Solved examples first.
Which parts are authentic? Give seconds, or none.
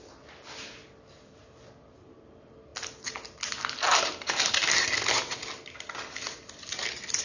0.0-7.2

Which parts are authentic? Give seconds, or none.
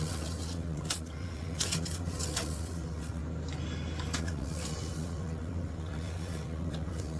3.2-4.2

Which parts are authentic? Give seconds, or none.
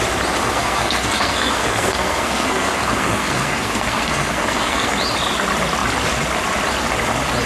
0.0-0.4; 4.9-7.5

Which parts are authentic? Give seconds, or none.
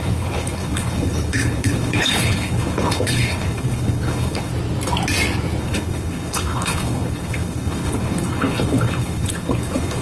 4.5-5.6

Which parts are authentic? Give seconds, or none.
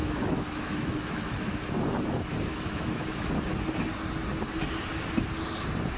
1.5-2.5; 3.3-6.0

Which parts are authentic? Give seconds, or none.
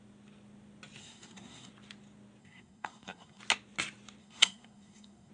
0.0-1.0; 1.7-2.4; 3.4-4.2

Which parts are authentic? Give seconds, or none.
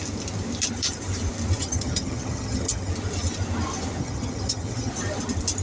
0.0-1.6; 2.9-4.0; 4.9-5.6